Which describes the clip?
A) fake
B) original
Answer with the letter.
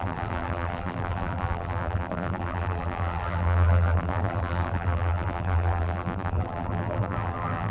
A